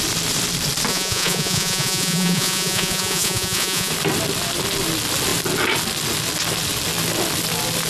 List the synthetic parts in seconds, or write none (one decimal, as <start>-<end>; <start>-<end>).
0.9-3.9